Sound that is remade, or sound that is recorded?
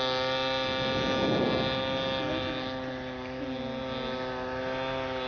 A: recorded